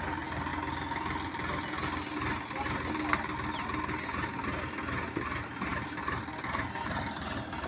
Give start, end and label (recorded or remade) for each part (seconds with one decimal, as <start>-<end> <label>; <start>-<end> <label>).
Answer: 0.0-7.7 recorded